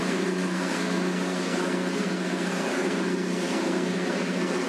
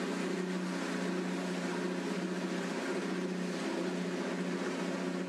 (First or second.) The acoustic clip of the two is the second